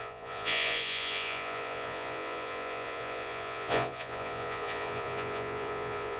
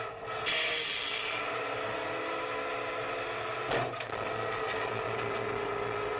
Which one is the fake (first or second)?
first